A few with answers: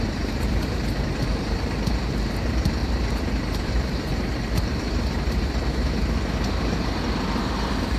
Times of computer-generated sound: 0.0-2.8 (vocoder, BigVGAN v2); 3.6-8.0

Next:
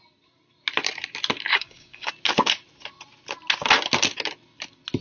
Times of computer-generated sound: 1.5-2.1 (codec, DAC)